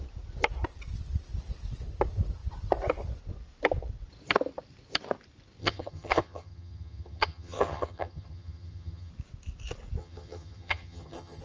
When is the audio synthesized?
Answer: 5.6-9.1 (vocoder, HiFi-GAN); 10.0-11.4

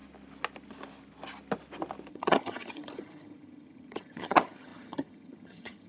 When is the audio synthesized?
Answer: 2.1-5.9 (vocoder, HiFi-GAN)

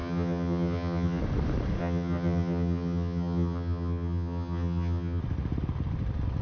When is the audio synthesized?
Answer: 0.0-1.2 (vocoder, HiFi-GAN); 1.8-5.2

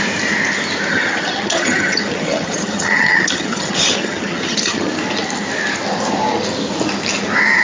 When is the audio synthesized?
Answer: 0.9-4.9 (vocoder, HiFi-GAN)

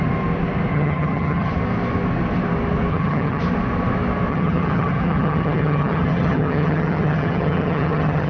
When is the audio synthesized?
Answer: 0.7-1.5 (vocoder, HiFi-GAN); 2.9-3.4; 4.3-8.3